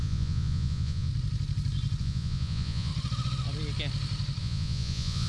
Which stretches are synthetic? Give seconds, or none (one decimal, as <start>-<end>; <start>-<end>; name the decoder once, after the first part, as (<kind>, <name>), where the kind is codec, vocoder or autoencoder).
0.0-1.1 (vocoder, Vocos); 2.0-2.9; 4.4-5.3